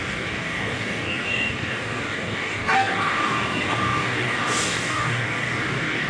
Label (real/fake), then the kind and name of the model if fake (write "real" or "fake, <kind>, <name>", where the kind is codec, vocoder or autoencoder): fake, codec, DAC